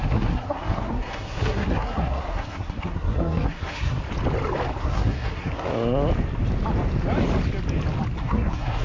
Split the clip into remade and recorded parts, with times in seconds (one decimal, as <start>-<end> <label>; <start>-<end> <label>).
0.0-4.0 remade; 4.0-4.8 recorded; 4.8-5.7 remade; 5.7-8.2 recorded; 8.2-8.8 remade